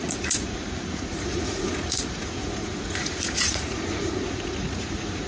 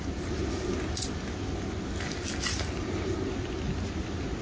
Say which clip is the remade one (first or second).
first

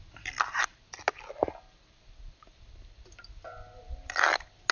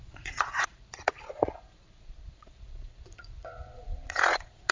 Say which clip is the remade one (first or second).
second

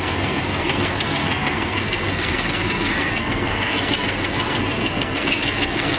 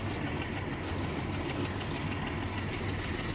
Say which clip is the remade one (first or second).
first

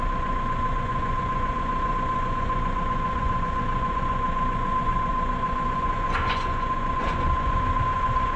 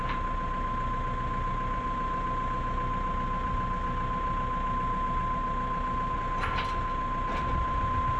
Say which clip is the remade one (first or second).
first